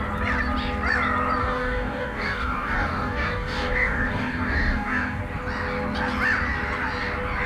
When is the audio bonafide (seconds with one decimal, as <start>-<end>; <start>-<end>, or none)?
0.0-1.4; 5.2-7.5